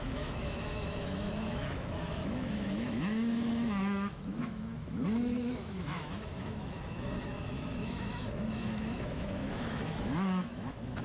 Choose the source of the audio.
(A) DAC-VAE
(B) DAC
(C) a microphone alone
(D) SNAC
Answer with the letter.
A